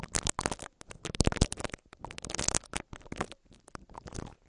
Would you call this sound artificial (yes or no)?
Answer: no